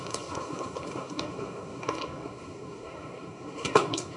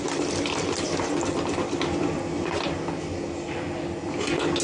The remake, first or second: first